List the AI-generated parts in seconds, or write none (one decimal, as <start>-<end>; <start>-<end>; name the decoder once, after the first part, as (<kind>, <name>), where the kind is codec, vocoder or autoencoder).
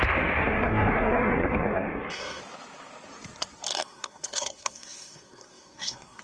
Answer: 0.4-2.4 (codec, SNAC); 3.7-6.2